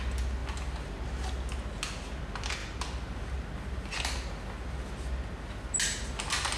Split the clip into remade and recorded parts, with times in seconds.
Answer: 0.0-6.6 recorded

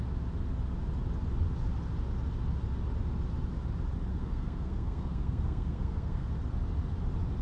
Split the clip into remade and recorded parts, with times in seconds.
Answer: 0.0-4.1 recorded; 4.1-6.3 remade; 6.3-7.4 recorded

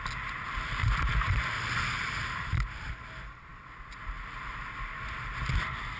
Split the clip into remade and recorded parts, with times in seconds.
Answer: 0.0-0.8 recorded; 0.8-1.4 remade; 1.4-6.0 recorded